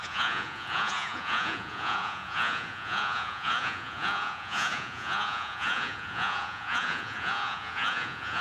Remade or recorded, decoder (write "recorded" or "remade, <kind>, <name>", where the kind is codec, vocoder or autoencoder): remade, vocoder, Vocos